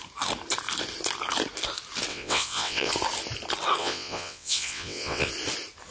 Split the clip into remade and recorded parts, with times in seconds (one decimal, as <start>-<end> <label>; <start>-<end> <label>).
0.0-2.1 recorded; 2.1-2.9 remade; 2.9-3.8 recorded; 3.8-5.3 remade; 5.3-5.9 recorded